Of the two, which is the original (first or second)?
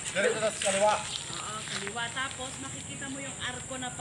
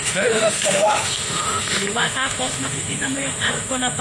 first